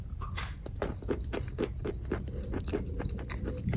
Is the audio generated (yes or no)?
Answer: no